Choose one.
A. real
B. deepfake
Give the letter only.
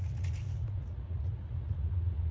B